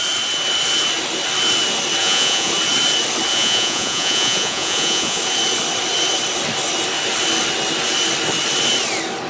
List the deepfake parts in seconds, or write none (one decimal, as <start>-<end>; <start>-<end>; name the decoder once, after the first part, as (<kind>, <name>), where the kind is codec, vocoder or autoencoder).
2.0-2.5 (vocoder, Vocos); 3.3-5.2